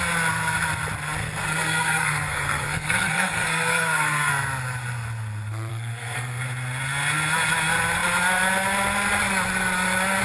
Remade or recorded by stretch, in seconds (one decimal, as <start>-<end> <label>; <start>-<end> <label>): 0.0-1.2 recorded; 1.2-4.3 remade; 4.3-5.7 recorded; 5.7-6.4 remade; 6.4-10.2 recorded